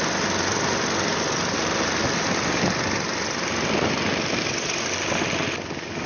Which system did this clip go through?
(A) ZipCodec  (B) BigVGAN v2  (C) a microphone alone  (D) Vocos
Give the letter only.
C